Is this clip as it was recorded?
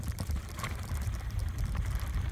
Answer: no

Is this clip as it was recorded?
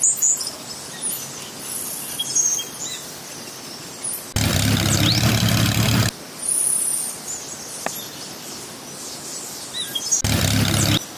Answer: yes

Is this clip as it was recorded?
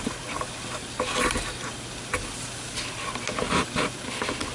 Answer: yes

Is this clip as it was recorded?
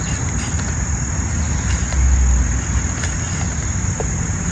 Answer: yes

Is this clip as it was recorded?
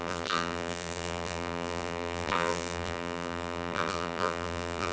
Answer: no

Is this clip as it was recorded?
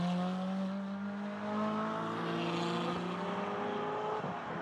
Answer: yes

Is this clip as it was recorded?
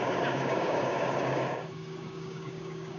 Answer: no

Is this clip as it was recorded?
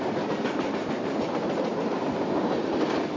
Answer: yes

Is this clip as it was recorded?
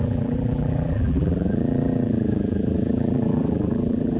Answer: no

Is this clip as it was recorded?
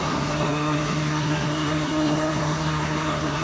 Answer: no